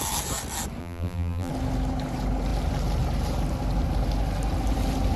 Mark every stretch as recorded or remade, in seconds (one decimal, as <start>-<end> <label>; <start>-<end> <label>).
0.0-0.8 recorded; 0.8-1.5 remade; 1.5-5.2 recorded